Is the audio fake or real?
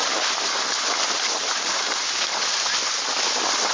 real